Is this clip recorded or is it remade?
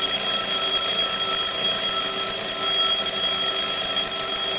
recorded